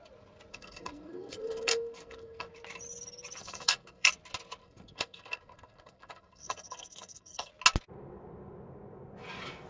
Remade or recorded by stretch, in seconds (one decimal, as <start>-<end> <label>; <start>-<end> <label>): 0.0-0.5 recorded; 0.5-2.5 remade; 2.5-3.4 recorded; 3.4-4.1 remade; 4.1-4.6 recorded; 4.6-7.5 remade; 7.5-9.7 recorded